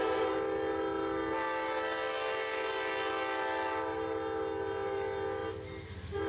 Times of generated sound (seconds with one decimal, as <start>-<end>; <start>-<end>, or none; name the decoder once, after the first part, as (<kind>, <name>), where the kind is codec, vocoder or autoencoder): none